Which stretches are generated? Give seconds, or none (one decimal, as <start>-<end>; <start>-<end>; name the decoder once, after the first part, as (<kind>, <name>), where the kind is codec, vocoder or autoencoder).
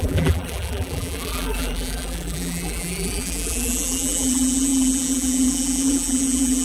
0.0-6.6 (vocoder, BigVGAN v2)